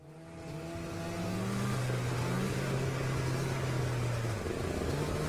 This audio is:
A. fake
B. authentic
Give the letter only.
B